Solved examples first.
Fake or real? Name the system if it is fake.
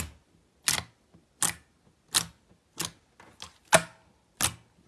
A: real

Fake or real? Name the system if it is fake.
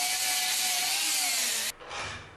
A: real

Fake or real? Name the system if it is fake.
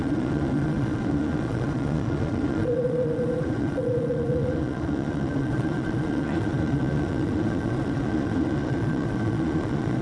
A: fake, vocoder, Vocos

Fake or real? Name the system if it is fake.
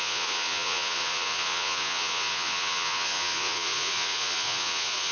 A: fake, vocoder, Vocos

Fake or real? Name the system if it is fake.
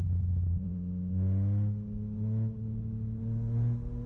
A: real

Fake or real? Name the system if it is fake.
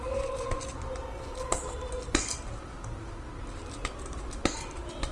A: real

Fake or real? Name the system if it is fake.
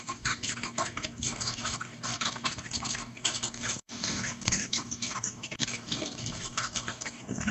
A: fake, codec, DAC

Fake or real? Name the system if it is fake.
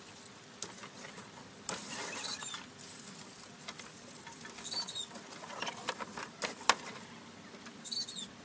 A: real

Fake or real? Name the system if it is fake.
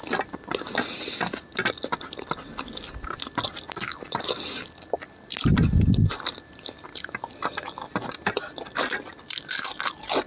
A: real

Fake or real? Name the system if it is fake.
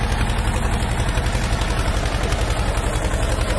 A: real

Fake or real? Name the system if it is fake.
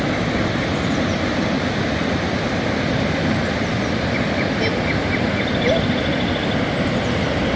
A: real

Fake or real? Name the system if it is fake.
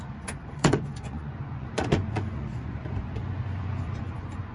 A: fake, vocoder, Vocos